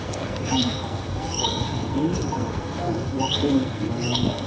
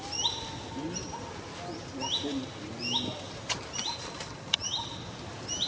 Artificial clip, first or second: first